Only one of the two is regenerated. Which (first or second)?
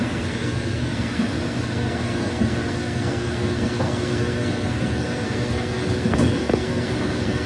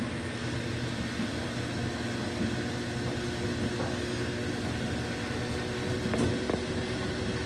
first